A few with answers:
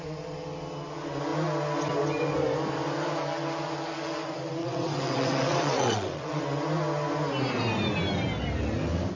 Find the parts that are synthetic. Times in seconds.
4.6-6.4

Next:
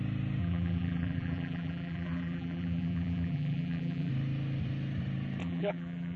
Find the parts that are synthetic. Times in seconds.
0.4-4.1; 5.4-6.2

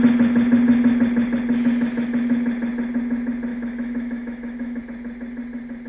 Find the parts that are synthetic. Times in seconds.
3.5-4.8

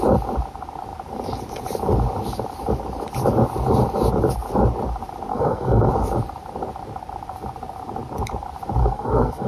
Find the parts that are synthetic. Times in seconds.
5.3-5.9; 8.8-9.5

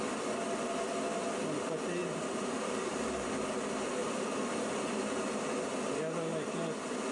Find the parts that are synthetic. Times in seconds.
2.0-3.3; 4.0-5.4

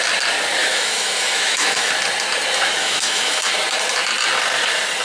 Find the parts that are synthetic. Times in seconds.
0.6-1.9; 2.8-3.5

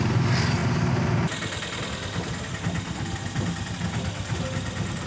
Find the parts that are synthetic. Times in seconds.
none

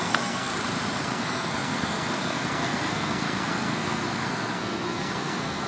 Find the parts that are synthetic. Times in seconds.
0.0-0.5; 1.0-5.7